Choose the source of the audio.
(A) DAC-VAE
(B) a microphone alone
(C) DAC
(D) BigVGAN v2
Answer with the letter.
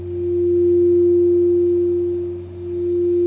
B